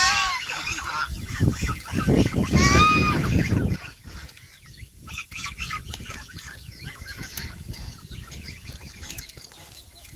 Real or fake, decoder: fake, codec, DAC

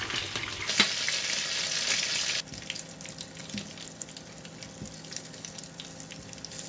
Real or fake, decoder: real